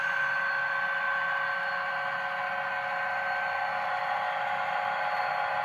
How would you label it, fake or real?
real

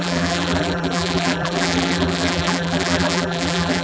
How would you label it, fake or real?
fake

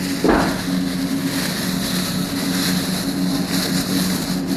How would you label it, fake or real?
real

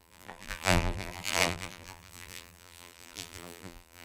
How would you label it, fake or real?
fake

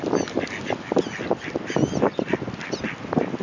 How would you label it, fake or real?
real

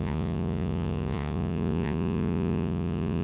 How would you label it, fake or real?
fake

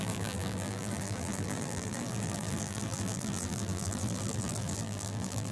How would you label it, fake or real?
fake